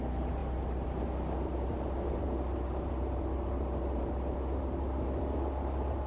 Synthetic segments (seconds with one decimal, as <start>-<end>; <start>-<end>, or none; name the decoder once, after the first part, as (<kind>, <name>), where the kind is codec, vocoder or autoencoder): none